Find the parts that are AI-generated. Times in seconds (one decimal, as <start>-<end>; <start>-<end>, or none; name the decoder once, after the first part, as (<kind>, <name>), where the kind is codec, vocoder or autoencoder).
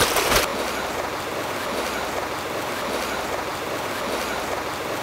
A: none